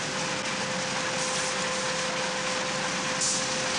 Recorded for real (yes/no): yes